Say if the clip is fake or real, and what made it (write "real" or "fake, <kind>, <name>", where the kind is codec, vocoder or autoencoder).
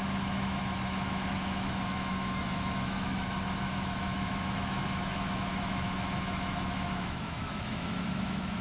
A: fake, autoencoder, DAC-VAE